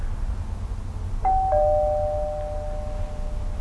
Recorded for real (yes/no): yes